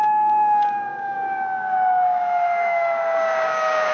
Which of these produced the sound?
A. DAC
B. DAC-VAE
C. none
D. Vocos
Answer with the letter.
A